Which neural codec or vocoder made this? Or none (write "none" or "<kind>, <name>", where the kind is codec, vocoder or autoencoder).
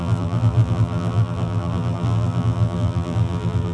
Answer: vocoder, BigVGAN v2